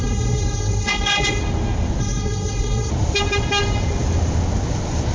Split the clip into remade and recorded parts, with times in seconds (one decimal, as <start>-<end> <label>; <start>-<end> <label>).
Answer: 0.0-1.4 remade; 1.4-2.0 recorded; 2.0-2.9 remade; 2.9-5.1 recorded